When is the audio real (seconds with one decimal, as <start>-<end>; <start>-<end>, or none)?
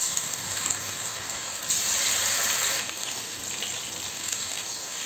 1.6-2.7; 3.4-4.1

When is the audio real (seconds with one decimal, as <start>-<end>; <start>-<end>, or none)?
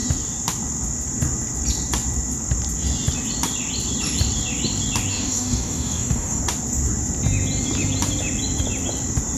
0.0-5.1; 6.4-9.4